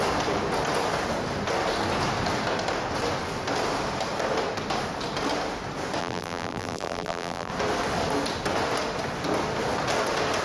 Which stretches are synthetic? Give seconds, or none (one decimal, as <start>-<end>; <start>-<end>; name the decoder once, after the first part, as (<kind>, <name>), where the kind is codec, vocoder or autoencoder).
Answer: 6.0-7.5 (vocoder, BigVGAN v2)